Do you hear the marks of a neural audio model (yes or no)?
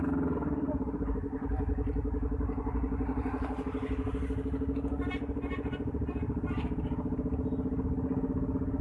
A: no